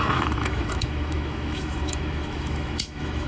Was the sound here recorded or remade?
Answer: remade